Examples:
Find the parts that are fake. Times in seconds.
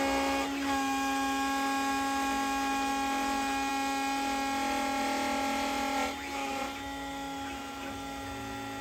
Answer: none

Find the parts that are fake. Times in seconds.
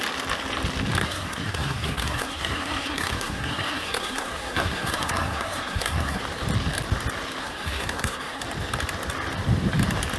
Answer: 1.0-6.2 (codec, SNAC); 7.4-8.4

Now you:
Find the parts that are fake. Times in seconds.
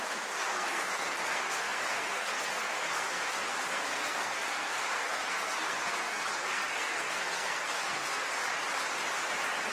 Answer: 0.0-8.4 (codec, SNAC)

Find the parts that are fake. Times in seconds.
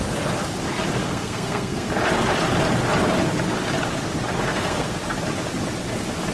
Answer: 1.0-1.9 (codec, SNAC); 4.5-5.0